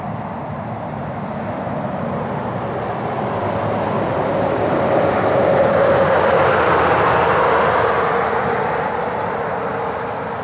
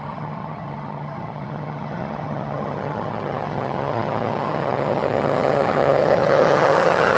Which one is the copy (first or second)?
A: second